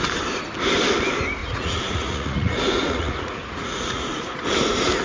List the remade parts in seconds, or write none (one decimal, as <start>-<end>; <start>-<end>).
1.4-4.4